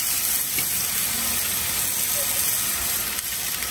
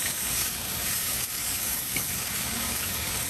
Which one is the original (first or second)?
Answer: first